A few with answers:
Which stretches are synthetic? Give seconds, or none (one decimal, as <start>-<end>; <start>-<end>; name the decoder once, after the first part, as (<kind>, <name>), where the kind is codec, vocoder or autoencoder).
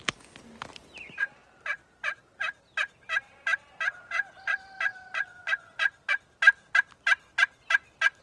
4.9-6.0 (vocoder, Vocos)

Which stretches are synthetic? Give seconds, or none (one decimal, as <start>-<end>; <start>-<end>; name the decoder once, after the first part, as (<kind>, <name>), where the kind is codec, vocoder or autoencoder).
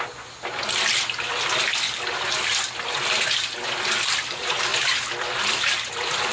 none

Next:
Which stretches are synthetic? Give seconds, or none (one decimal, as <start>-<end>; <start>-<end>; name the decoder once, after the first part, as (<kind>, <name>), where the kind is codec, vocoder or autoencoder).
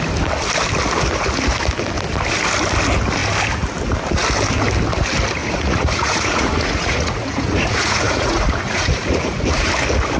5.4-9.7 (vocoder, Vocos)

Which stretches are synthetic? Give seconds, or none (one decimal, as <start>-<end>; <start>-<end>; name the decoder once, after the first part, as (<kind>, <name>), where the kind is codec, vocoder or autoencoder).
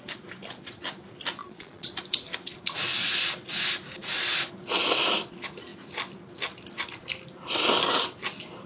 1.4-1.9 (vocoder, Vocos)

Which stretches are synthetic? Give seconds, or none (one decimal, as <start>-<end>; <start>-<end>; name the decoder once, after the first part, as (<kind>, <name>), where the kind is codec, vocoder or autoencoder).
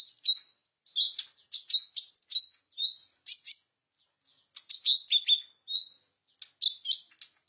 none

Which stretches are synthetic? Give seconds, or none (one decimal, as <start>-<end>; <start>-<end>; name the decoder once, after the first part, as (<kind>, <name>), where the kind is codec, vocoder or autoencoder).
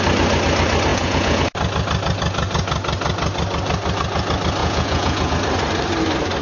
0.9-1.4 (vocoder, Vocos); 4.6-5.3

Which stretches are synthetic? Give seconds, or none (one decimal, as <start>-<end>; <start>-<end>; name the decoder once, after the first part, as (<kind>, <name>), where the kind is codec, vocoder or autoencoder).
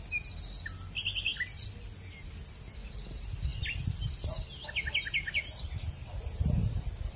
none